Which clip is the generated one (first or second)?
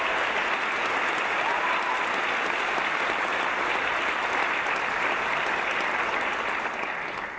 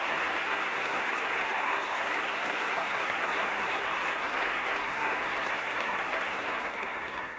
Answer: second